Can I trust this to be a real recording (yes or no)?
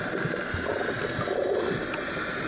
yes